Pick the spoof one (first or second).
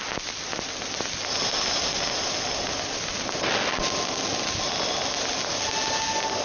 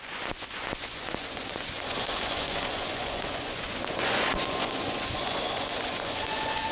second